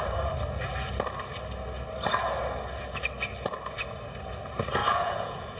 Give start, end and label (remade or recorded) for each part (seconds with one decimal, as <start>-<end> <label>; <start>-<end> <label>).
0.0-4.8 recorded; 4.8-5.6 remade